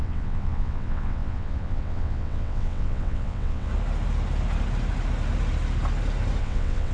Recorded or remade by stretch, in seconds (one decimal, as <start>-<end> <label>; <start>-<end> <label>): 0.0-3.7 remade; 3.7-6.4 recorded; 6.4-6.9 remade